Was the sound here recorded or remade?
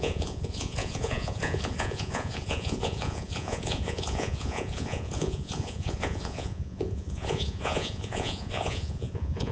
remade